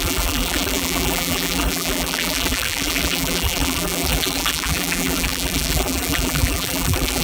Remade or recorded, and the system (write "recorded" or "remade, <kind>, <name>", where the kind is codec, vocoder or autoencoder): remade, vocoder, BigVGAN v2